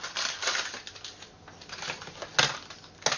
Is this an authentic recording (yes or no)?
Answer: yes